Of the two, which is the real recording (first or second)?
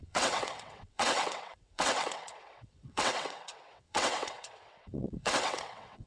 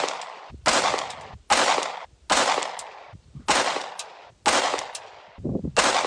second